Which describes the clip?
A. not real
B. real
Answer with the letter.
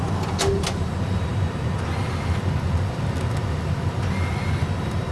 B